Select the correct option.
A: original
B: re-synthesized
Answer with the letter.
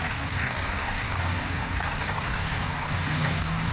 B